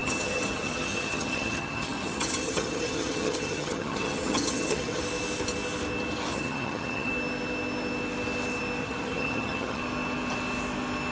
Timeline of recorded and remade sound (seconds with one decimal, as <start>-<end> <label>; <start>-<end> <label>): 0.0-5.0 remade; 5.0-6.3 recorded; 6.3-7.1 remade; 7.1-8.8 recorded; 8.8-9.8 remade; 9.8-11.1 recorded